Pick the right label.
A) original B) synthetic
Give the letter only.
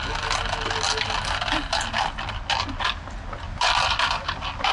A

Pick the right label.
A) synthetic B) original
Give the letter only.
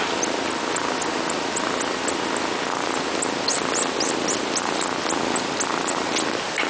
B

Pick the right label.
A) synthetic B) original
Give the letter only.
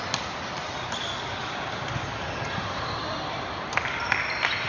B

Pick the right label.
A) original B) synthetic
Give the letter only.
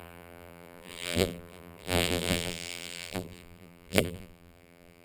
B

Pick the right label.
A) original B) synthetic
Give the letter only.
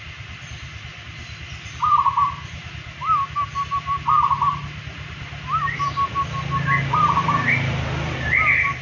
A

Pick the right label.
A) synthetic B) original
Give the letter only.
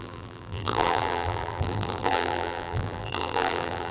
A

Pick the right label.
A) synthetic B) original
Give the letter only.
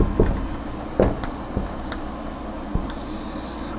B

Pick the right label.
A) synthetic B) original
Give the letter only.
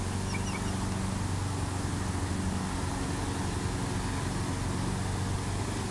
B